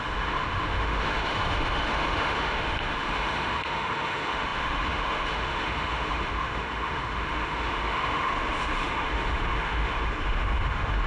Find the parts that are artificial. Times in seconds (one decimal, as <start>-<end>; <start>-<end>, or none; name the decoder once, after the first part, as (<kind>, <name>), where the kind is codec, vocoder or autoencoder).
0.0-11.1 (autoencoder, DAC-VAE)